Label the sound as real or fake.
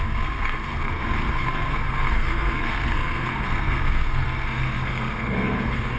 fake